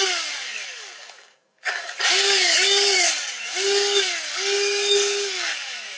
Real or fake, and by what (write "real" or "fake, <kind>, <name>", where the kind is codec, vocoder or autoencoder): fake, codec, DAC